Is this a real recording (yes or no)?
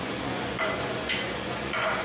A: no